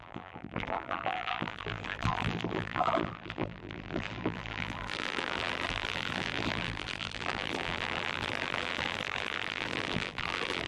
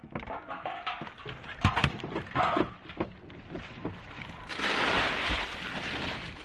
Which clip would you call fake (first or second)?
first